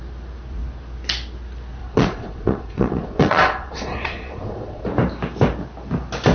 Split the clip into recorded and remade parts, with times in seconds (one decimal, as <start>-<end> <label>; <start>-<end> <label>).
0.0-1.8 recorded; 1.8-4.8 remade; 4.8-6.3 recorded